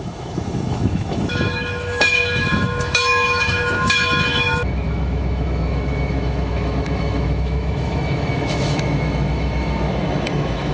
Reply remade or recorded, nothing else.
remade